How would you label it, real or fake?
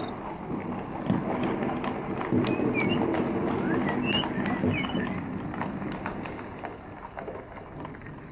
real